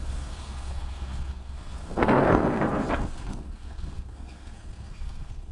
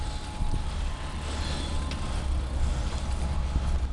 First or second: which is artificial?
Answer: first